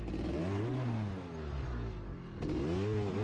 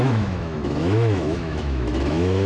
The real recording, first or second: first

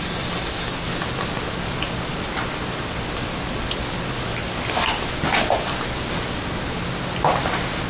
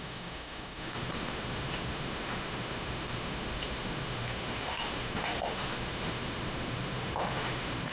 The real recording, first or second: first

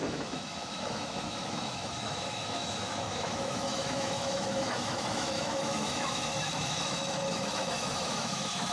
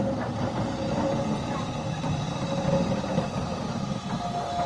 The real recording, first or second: second